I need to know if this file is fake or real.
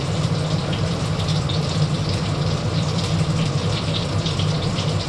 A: fake